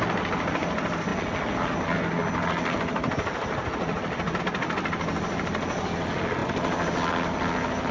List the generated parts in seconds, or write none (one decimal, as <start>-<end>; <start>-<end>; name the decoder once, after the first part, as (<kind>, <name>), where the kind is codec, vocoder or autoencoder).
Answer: none